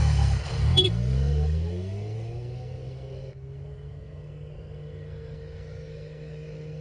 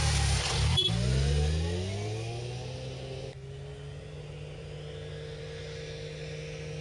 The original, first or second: second